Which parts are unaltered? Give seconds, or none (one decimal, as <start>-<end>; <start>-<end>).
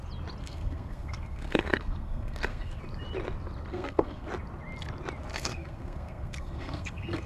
0.0-0.4; 2.8-3.7; 4.3-5.3